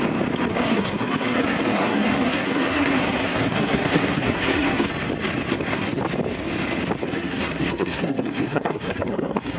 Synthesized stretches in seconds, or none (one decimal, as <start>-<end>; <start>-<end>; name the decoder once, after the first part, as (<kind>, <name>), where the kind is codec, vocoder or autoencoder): 0.5-4.9 (codec, SNAC); 5.5-6.0; 7.0-9.6